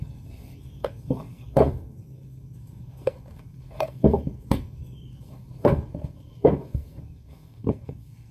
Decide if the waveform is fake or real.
fake